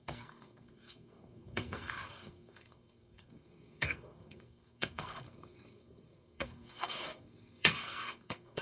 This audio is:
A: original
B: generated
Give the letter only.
B